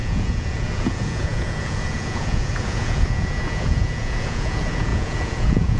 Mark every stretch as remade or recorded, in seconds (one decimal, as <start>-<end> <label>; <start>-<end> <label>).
0.0-5.8 remade